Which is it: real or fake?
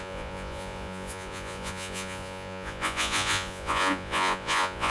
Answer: fake